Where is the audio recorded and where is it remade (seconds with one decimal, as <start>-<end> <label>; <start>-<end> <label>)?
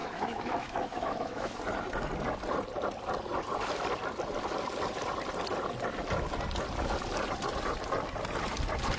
0.0-1.6 remade; 1.6-9.0 recorded